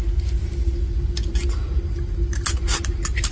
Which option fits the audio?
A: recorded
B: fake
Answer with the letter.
A